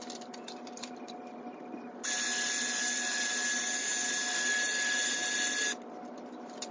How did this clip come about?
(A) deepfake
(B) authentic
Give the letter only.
B